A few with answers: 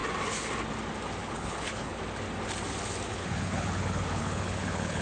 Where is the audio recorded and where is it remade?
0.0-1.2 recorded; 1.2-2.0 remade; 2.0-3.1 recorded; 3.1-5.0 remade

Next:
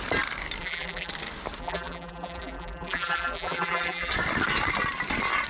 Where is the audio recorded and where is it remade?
0.0-0.6 recorded; 0.6-1.1 remade; 1.1-1.6 recorded; 1.6-4.1 remade; 4.1-5.5 recorded